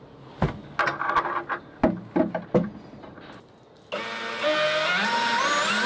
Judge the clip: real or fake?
real